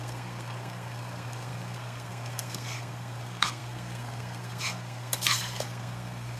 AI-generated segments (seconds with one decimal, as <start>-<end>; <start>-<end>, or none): 0.0-6.4